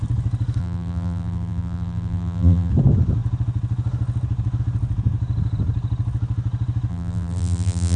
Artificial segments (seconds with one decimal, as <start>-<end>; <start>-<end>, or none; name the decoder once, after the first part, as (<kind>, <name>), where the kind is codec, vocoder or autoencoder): 0.6-2.7 (vocoder, BigVGAN v2); 6.9-8.0